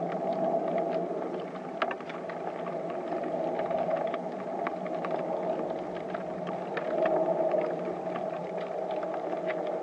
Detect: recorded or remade recorded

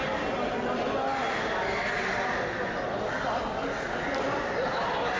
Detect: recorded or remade recorded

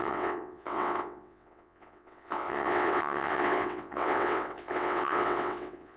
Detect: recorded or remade remade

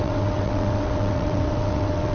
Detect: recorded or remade remade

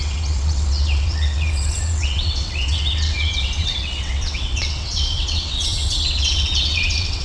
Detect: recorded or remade remade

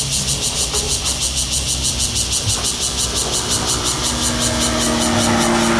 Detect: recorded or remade recorded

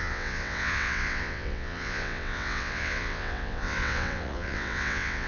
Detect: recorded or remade remade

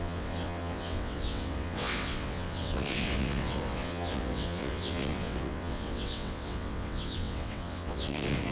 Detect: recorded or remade remade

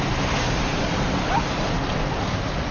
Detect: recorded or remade recorded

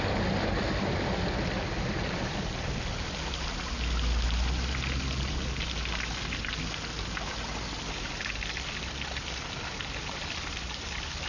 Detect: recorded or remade recorded